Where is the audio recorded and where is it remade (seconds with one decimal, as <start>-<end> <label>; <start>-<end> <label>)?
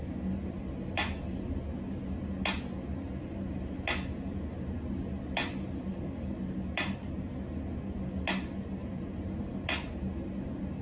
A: 0.0-8.8 recorded; 8.8-9.5 remade; 9.5-10.8 recorded